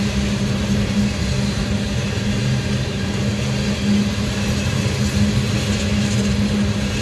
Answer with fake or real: real